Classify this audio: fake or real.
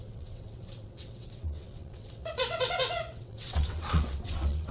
fake